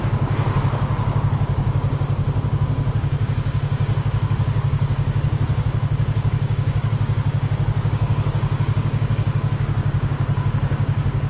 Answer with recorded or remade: remade